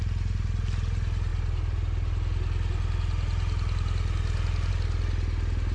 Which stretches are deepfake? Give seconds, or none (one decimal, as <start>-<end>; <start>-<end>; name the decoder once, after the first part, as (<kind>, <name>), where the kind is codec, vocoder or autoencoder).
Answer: none